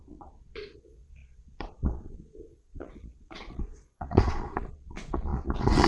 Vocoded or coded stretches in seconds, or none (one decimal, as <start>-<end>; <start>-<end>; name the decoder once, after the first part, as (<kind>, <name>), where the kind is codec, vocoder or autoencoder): 0.0-5.9 (vocoder, Vocos)